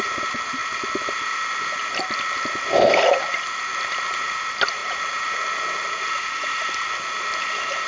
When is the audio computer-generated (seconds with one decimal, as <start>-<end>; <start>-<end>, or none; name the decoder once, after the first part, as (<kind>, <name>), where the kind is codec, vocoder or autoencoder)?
none